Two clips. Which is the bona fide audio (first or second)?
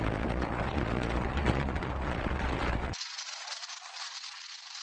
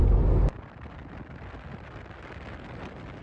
second